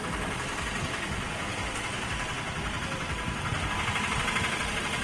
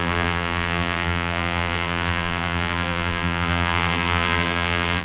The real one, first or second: first